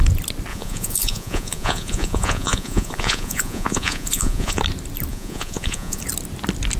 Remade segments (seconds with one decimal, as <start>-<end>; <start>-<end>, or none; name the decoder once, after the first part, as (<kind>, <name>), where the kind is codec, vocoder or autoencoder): 0.5-4.6 (vocoder, Vocos); 5.1-6.0